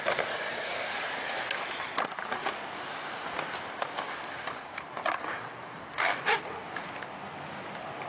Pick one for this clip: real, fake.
real